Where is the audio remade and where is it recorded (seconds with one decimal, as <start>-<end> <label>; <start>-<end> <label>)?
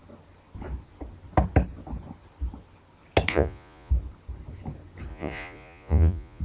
0.0-3.3 recorded; 3.3-3.9 remade; 3.9-5.1 recorded; 5.1-6.4 remade